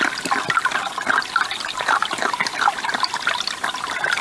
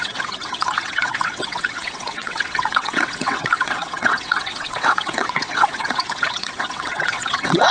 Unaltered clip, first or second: first